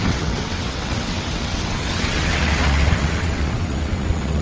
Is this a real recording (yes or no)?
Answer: no